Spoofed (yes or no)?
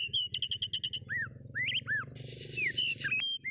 no